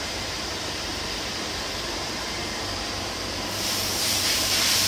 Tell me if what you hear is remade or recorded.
remade